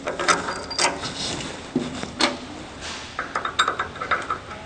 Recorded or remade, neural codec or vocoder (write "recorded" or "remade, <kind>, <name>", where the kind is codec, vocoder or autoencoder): recorded